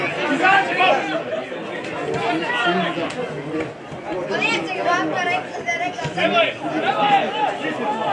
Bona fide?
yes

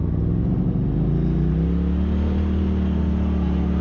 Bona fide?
yes